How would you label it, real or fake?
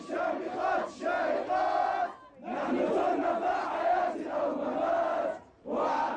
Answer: real